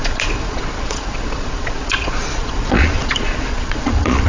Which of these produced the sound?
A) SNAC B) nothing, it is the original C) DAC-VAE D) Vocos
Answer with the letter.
D